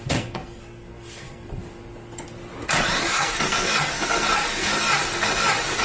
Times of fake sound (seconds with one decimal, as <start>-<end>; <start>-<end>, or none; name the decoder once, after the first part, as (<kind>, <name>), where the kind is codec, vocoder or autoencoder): 0.0-1.6 (codec, SNAC); 3.1-4.7